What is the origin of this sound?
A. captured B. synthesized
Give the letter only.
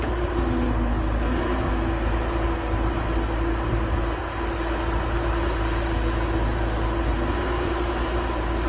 A